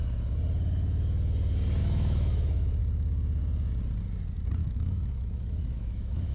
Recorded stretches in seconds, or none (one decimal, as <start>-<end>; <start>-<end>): 0.0-1.8; 2.8-4.6